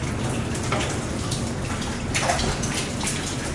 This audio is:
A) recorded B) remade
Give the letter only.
A